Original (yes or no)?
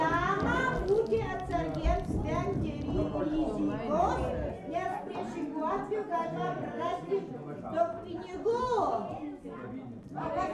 yes